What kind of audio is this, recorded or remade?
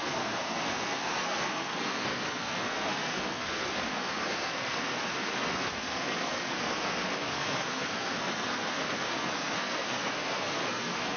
remade